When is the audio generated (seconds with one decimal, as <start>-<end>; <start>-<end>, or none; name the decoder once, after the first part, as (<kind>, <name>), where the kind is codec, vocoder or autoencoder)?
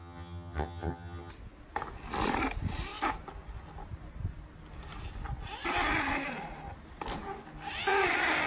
0.0-1.3 (vocoder, HiFi-GAN)